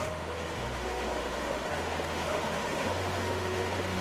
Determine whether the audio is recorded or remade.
remade